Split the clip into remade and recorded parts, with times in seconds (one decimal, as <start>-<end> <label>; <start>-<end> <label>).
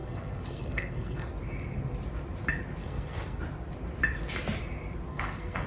0.0-1.3 remade; 1.3-2.8 recorded; 2.8-3.4 remade; 3.4-5.1 recorded; 5.1-5.7 remade